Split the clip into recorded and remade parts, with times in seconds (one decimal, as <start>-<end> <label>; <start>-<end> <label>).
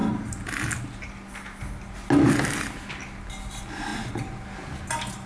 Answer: 0.0-5.3 recorded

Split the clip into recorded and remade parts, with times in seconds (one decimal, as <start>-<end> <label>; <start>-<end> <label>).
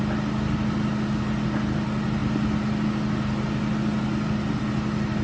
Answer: 0.0-5.2 recorded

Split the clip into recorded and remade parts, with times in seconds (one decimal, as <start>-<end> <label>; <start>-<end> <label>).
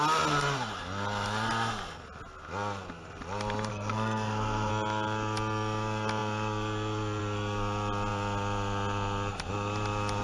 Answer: 0.0-3.7 recorded; 3.7-4.7 remade; 4.7-10.2 recorded